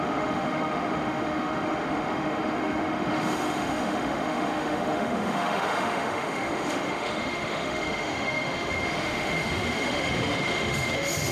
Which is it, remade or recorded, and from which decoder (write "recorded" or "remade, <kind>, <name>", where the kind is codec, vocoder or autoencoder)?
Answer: remade, autoencoder, DAC-VAE